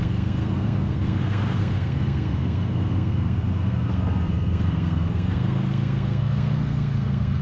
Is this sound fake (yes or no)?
yes